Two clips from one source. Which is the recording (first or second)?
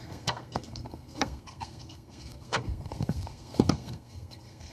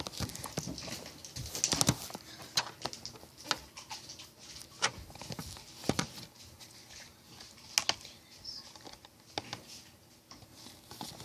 second